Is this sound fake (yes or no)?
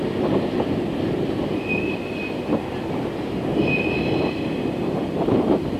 no